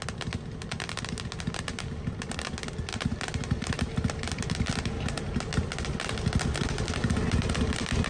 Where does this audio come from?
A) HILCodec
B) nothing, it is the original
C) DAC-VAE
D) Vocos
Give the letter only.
B